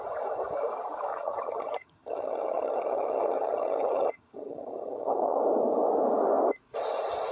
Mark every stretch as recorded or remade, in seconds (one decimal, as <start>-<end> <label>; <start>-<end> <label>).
0.0-1.1 recorded; 1.1-5.4 remade; 5.4-7.3 recorded